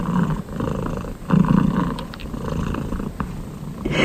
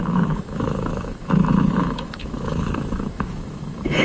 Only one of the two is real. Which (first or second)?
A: first